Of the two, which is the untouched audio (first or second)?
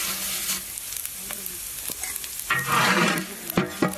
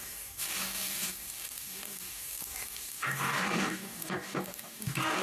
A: first